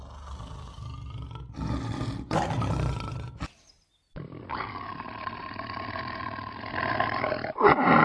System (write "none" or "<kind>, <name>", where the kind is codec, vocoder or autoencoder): none